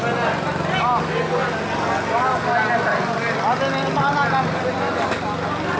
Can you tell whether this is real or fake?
real